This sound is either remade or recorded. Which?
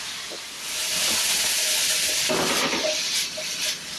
recorded